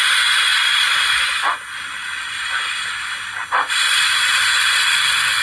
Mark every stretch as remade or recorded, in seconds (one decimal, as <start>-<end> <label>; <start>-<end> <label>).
0.0-0.5 recorded; 0.5-1.0 remade; 1.0-5.4 recorded